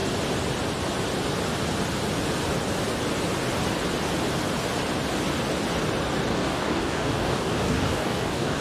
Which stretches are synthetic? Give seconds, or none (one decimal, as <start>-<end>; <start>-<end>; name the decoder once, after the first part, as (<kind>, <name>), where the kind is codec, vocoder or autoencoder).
6.3-8.6 (codec, DAC)